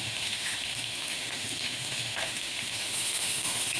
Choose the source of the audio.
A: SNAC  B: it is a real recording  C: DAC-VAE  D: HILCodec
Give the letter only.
C